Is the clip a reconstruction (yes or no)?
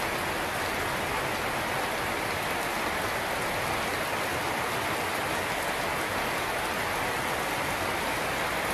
no